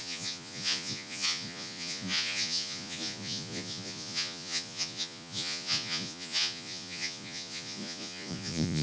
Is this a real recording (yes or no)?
no